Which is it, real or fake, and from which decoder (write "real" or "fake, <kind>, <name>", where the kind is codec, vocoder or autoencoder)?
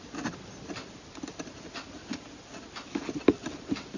real